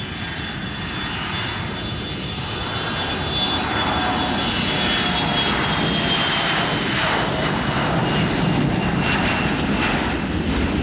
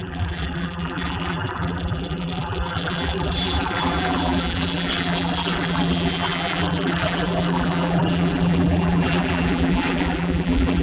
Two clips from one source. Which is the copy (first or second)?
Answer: second